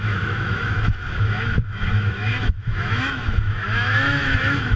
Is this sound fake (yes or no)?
yes